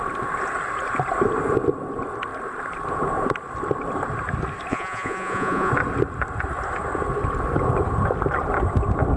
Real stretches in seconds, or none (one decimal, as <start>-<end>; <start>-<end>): 0.0-4.7; 5.7-9.2